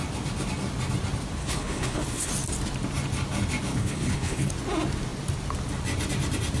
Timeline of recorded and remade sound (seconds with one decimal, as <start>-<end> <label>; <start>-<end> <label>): 0.0-1.4 recorded; 1.4-2.3 remade; 2.3-3.7 recorded; 3.7-4.5 remade; 4.5-6.6 recorded